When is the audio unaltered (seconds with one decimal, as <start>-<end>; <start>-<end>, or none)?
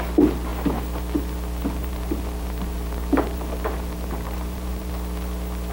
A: 0.0-1.8; 4.9-5.7